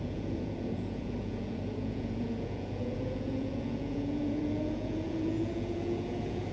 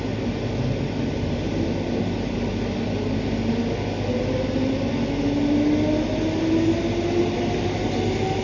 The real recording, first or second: second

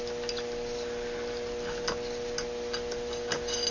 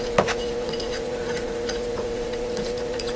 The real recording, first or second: first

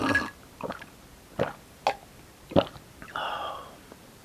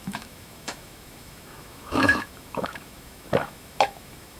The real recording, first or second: first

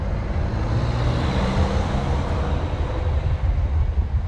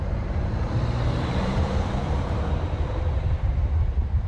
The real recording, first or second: first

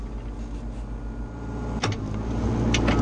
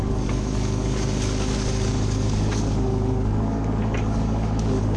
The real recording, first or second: first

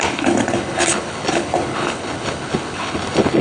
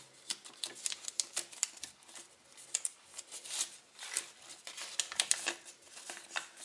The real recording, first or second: second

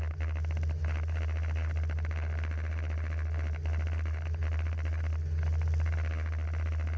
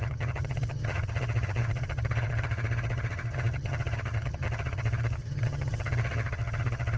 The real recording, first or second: first